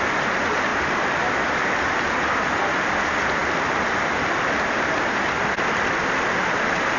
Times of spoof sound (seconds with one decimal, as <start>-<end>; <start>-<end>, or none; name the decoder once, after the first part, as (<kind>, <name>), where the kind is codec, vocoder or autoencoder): none